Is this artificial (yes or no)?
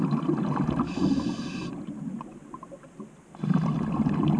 no